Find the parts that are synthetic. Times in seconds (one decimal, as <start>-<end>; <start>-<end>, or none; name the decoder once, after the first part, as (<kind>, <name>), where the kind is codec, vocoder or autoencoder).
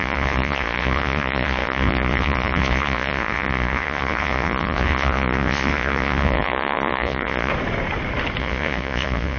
0.0-7.5 (vocoder, Vocos); 8.4-9.4